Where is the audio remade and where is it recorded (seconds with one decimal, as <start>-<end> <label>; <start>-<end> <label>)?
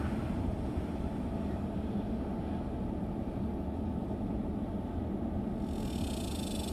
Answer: 0.0-0.5 recorded; 0.5-2.0 remade; 2.0-4.0 recorded; 4.0-5.0 remade; 5.0-6.7 recorded